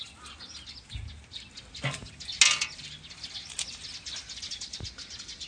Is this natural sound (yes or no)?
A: yes